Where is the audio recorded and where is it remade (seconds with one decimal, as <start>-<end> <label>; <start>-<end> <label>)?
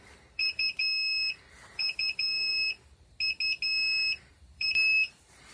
0.0-0.8 remade; 0.8-1.5 recorded; 1.5-2.5 remade; 2.5-4.3 recorded; 4.3-5.5 remade